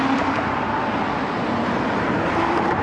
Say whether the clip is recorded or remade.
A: remade